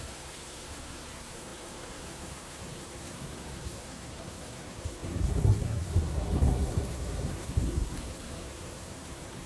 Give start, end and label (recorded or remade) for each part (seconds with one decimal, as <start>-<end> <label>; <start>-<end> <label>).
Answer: 0.0-9.5 remade

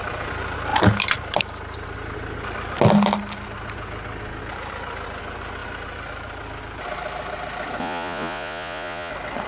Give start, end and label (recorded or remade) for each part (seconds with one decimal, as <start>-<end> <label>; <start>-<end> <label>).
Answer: 0.0-7.8 recorded; 7.8-9.1 remade; 9.1-9.5 recorded